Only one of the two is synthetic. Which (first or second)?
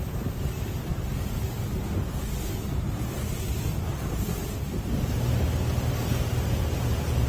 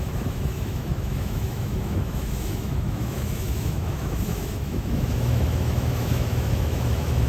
second